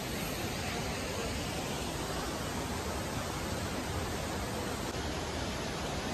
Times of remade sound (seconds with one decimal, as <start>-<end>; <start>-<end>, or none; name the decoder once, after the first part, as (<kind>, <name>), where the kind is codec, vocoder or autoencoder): none